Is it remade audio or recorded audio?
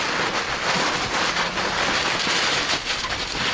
recorded